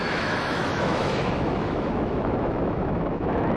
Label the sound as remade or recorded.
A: remade